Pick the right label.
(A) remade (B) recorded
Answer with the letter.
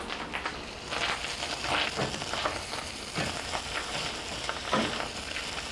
B